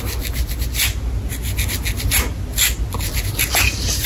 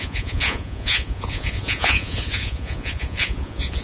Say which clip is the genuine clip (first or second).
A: first